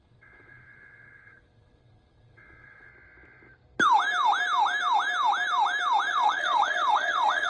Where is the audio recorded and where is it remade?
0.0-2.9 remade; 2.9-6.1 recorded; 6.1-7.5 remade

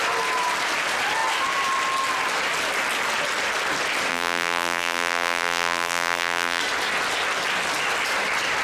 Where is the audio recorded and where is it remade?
0.0-4.1 recorded; 4.1-6.6 remade; 6.6-8.6 recorded

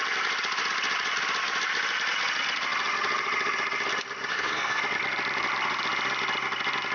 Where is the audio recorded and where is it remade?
0.0-4.3 recorded; 4.3-4.8 remade; 4.8-6.9 recorded

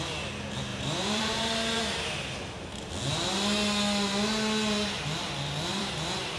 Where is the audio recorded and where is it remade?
0.0-0.7 recorded; 0.7-2.9 remade; 2.9-5.7 recorded; 5.7-6.4 remade

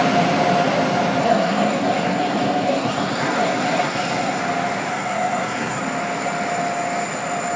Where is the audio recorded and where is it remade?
0.0-1.2 recorded; 1.2-4.4 remade; 4.4-4.9 recorded; 4.9-5.8 remade; 5.8-7.6 recorded

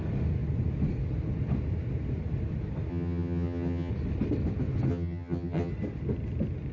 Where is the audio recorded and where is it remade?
0.0-2.9 recorded; 2.9-3.9 remade; 3.9-4.9 recorded; 4.9-5.7 remade; 5.7-6.7 recorded